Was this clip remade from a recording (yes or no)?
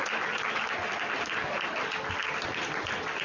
no